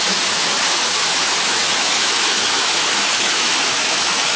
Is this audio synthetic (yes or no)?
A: yes